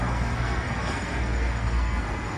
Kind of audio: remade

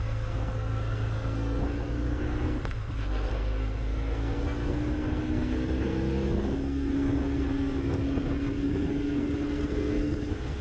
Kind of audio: remade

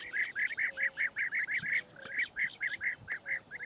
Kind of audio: recorded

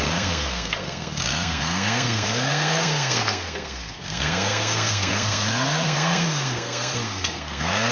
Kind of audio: remade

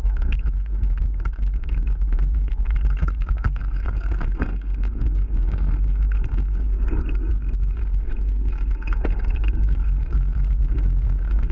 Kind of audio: remade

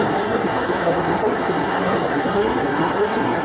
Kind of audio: remade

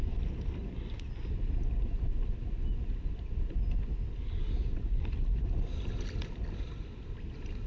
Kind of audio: recorded